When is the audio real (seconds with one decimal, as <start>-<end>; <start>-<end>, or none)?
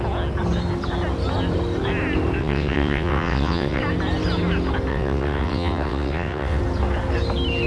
0.0-2.4; 3.8-4.9; 6.6-7.7